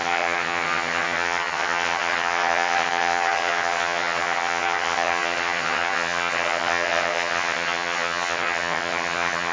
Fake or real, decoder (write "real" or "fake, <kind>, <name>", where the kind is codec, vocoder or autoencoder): fake, vocoder, HiFi-GAN